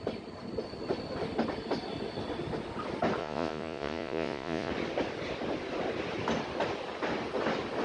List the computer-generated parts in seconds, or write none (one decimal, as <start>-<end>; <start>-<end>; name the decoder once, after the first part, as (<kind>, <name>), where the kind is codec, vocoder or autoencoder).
3.2-4.7 (vocoder, Vocos)